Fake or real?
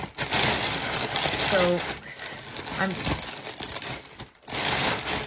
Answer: real